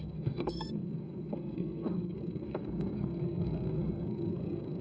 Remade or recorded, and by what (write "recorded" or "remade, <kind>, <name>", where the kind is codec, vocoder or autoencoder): remade, codec, SNAC